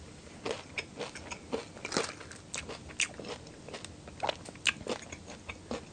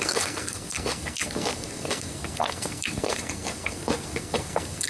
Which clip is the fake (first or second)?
second